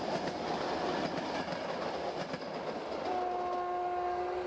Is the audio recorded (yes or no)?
yes